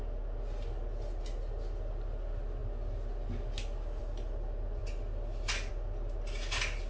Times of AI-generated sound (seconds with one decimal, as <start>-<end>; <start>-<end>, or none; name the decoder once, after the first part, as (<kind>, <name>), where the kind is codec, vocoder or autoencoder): none